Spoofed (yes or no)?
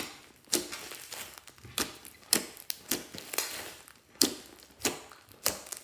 no